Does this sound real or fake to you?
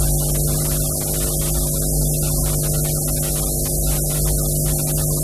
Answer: real